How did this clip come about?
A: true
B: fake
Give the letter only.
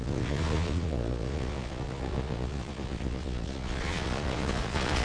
B